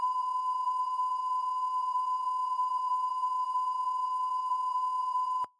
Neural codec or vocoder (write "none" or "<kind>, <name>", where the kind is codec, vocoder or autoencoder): vocoder, Vocos